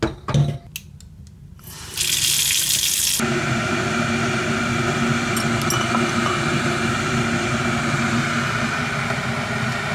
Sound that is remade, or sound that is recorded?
recorded